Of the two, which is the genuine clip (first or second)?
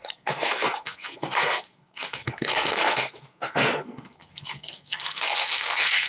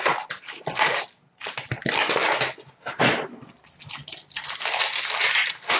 second